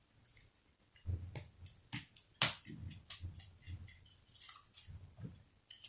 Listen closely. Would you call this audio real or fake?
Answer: real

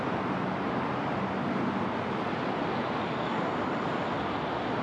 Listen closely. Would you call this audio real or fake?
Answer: real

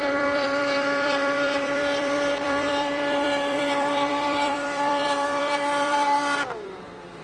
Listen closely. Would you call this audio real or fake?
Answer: fake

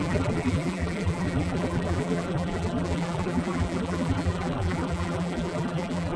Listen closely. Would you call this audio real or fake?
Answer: fake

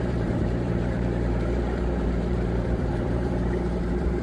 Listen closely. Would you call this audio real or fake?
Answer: fake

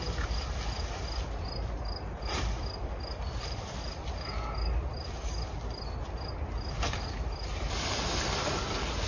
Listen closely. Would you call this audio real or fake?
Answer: real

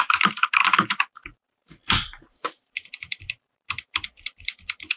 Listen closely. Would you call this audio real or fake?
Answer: fake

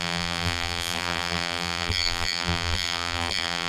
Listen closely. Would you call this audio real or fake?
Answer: fake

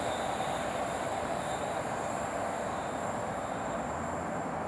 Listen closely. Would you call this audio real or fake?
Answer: real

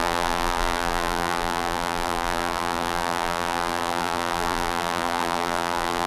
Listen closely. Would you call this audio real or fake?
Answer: fake